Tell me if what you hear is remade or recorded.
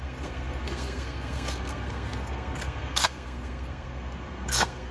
remade